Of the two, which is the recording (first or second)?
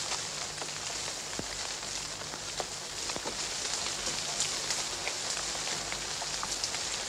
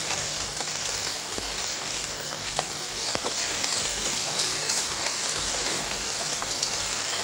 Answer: first